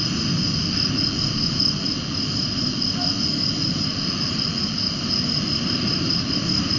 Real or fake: real